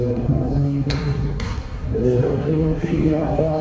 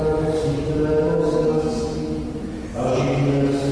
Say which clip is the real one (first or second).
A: second